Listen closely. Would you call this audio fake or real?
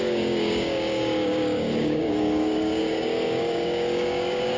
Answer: fake